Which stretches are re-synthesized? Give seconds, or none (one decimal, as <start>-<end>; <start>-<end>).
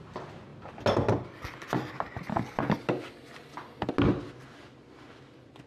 none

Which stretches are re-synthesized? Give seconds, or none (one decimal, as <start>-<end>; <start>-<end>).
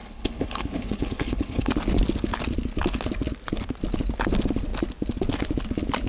0.0-1.7